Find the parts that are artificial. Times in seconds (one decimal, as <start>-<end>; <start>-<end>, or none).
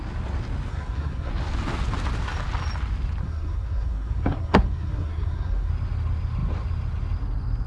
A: 0.7-1.3; 3.2-5.7